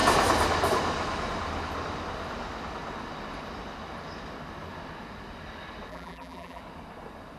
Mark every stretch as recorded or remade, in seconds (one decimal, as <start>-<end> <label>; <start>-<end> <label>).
0.0-5.9 recorded; 5.9-6.6 remade; 6.6-7.4 recorded